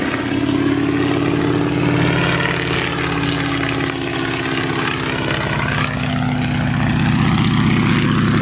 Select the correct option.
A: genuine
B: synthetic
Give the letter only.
A